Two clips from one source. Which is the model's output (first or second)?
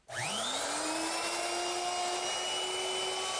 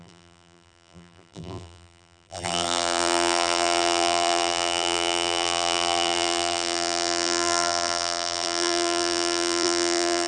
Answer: second